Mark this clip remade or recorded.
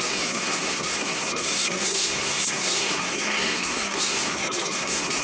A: remade